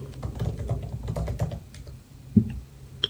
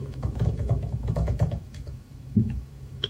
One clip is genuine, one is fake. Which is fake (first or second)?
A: second